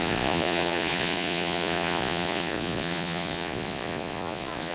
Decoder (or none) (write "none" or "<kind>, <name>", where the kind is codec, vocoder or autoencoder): vocoder, Vocos